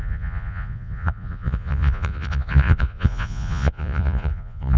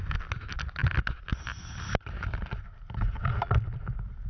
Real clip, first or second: second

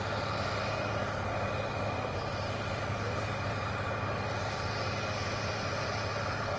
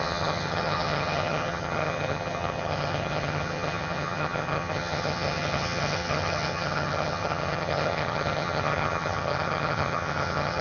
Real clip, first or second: first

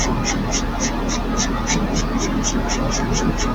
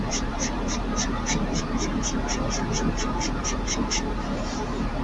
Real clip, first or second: first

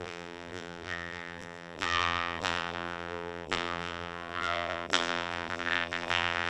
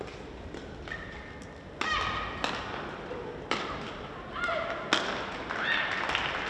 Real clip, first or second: second